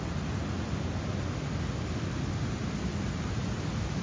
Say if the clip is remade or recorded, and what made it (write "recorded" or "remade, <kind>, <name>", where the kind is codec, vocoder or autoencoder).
recorded